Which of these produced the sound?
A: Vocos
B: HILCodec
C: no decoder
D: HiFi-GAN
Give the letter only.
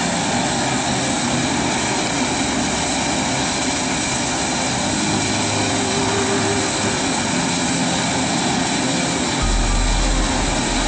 C